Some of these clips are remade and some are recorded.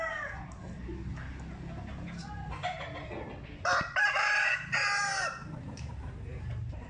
recorded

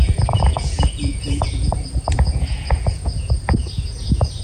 remade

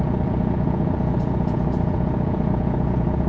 remade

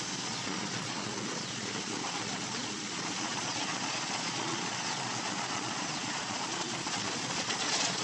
remade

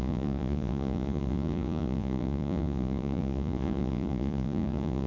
remade